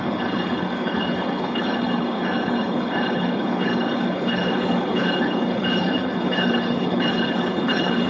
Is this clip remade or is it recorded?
remade